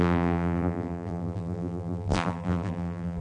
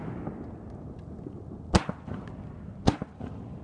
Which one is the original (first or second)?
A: second